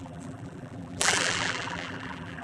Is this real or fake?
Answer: fake